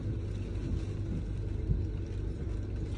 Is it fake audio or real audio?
real